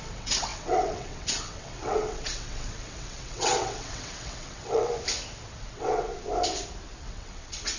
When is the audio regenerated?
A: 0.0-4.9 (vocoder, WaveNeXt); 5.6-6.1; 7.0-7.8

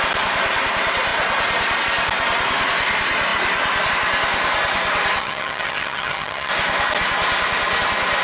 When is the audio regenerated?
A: 5.2-6.5 (vocoder, HiFi-GAN)

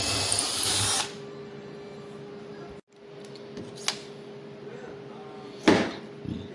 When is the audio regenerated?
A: none

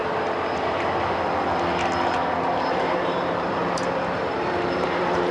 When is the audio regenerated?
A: 2.7-5.3 (vocoder, BigVGAN v2)

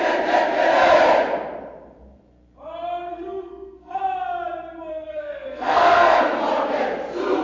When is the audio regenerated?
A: 3.1-4.0 (codec, SNAC); 4.9-6.2

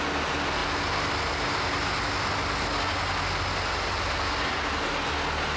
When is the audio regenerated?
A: none

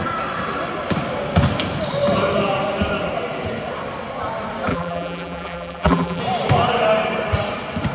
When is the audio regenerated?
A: 4.7-6.2 (vocoder, BigVGAN v2)

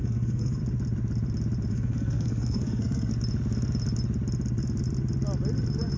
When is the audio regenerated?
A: 0.0-0.6 (codec, SNAC); 1.7-3.1